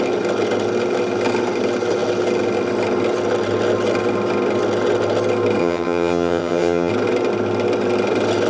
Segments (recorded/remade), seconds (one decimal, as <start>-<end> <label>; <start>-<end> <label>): 0.0-5.6 recorded; 5.6-6.9 remade; 6.9-8.5 recorded